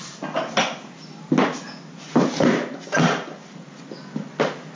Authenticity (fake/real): real